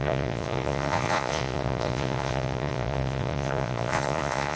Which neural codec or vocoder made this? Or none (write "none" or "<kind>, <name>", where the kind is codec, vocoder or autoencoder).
vocoder, Vocos